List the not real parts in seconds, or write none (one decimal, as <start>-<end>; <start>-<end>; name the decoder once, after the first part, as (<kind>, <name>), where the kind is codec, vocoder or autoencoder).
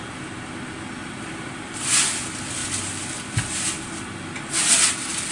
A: 1.0-1.8 (vocoder, BigVGAN v2)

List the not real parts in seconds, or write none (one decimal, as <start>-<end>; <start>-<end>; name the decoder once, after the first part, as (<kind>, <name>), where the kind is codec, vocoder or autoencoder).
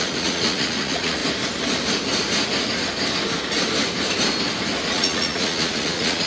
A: 0.0-1.2 (vocoder, Vocos); 4.9-6.3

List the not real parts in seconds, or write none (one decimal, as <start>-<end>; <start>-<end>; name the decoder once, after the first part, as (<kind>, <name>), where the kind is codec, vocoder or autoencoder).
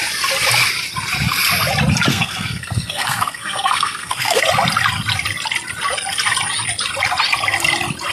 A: 2.1-4.4 (codec, SNAC)